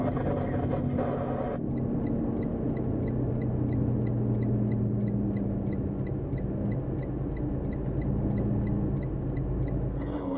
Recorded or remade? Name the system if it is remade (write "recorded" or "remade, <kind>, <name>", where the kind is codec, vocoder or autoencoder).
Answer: recorded